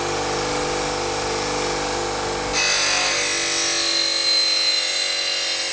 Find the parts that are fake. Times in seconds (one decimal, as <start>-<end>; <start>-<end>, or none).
none